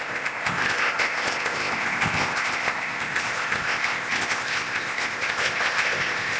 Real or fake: fake